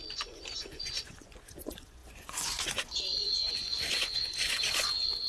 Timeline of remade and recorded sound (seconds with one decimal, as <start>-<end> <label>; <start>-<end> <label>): 0.0-5.3 remade